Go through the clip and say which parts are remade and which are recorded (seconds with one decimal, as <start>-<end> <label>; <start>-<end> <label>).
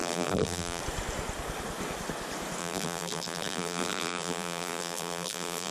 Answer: 0.0-0.8 remade; 0.8-2.6 recorded; 2.6-5.7 remade